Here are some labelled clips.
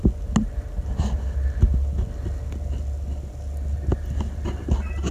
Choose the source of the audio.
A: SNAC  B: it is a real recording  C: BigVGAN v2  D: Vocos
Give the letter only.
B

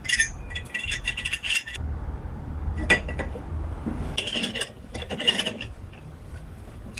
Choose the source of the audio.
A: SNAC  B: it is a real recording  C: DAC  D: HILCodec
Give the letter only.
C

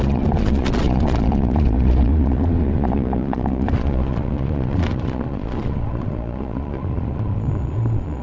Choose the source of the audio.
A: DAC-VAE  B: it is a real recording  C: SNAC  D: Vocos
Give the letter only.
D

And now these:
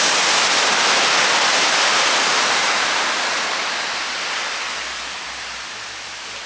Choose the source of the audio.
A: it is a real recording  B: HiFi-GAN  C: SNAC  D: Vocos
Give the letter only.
A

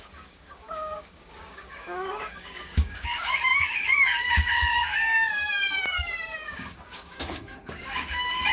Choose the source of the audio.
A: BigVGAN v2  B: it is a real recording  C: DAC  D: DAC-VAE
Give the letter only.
C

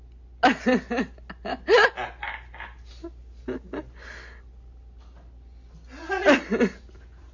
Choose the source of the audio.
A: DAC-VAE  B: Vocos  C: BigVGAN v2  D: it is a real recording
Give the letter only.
D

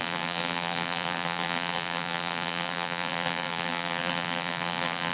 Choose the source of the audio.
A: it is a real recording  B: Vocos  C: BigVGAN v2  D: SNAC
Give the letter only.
C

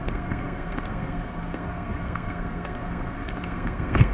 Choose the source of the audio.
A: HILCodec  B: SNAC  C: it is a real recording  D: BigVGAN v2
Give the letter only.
B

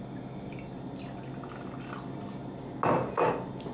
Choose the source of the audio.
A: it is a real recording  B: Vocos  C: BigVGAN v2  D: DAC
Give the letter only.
A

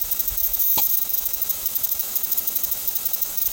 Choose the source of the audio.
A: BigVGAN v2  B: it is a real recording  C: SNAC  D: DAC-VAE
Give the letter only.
D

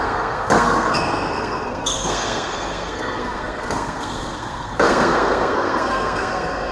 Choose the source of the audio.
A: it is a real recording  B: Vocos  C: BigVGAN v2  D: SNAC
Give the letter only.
D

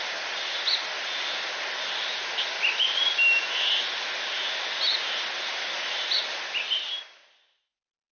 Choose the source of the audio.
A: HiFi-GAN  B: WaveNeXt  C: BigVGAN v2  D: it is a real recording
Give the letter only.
D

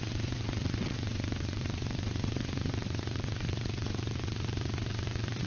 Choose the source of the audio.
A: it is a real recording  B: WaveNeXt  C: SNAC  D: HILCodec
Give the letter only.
B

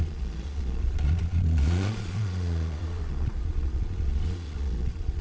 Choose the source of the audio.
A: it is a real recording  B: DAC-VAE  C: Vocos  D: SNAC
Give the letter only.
C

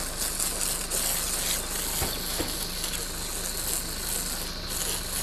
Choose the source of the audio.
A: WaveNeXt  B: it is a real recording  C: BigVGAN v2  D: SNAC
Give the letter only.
B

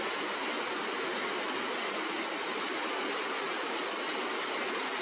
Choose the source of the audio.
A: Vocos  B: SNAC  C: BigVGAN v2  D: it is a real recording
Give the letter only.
D